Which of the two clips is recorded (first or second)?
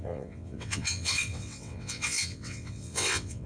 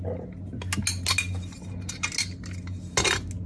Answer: second